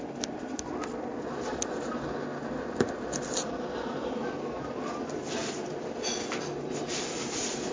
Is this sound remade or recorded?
recorded